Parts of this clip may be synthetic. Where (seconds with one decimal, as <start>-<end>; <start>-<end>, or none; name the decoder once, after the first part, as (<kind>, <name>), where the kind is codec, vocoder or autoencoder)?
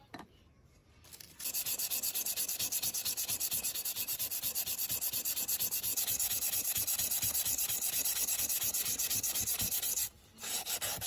5.9-8.4 (vocoder, BigVGAN v2)